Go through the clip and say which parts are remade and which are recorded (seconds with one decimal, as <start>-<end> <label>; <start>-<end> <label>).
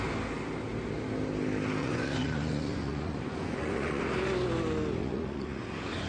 0.0-1.8 recorded; 1.8-4.0 remade; 4.0-5.0 recorded; 5.0-5.6 remade; 5.6-6.1 recorded